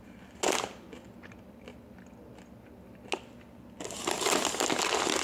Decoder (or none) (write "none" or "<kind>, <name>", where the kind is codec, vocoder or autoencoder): none